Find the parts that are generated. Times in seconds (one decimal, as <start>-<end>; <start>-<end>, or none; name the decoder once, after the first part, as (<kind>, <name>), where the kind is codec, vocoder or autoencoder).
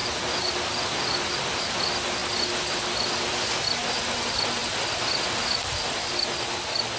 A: none